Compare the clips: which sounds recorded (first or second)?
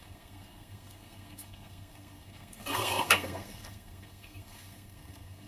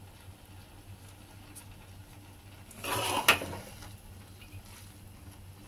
second